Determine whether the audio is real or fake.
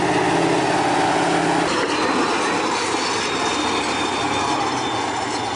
real